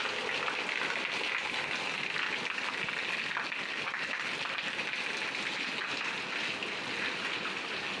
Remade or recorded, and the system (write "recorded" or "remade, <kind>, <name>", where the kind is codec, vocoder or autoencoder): recorded